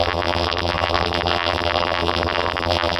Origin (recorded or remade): remade